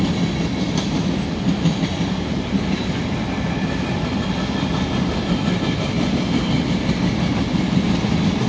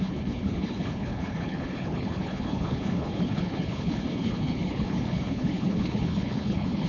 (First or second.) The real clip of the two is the first